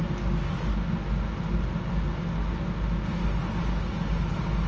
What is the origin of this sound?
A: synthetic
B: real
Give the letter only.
B